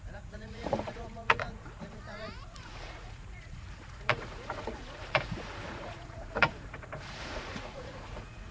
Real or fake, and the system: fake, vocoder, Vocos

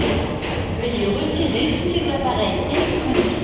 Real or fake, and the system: real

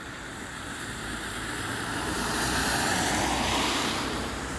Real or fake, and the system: fake, vocoder, BigVGAN v2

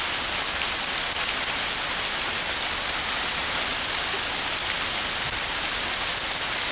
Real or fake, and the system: real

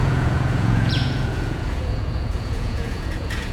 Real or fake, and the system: fake, vocoder, Vocos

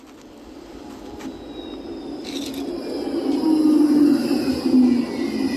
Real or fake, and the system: real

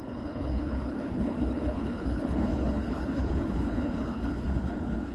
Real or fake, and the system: fake, codec, HILCodec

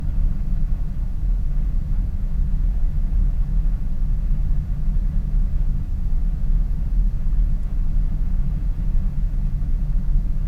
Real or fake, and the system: fake, vocoder, Vocos